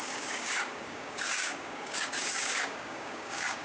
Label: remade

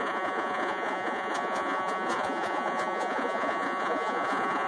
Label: remade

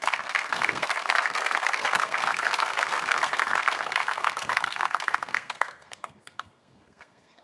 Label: remade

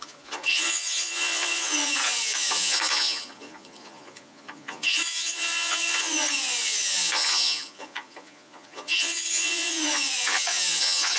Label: remade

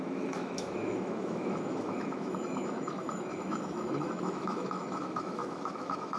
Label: remade